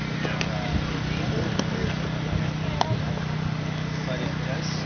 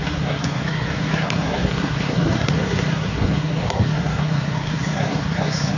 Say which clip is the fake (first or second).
second